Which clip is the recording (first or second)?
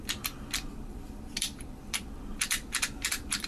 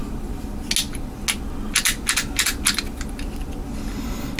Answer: second